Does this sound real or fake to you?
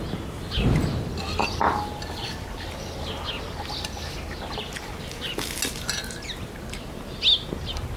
real